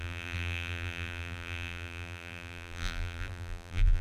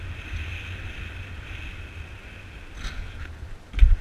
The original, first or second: second